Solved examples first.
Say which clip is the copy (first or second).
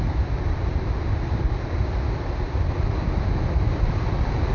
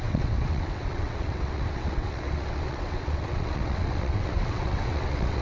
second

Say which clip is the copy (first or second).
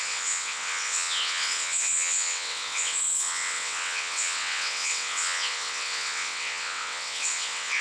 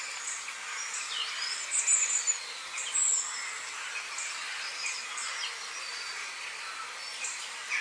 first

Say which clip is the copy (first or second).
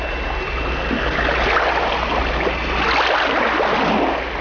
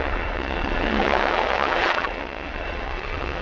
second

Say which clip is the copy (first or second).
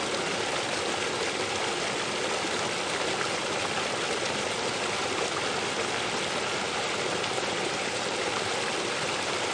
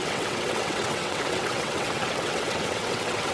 second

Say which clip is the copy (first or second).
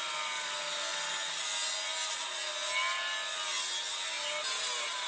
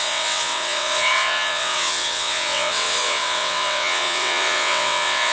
second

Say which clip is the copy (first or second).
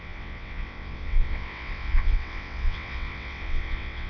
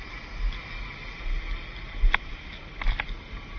first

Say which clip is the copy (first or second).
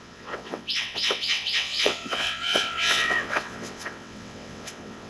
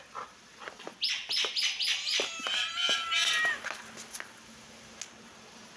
first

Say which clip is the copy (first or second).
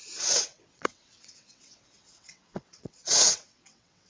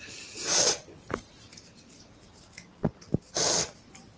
first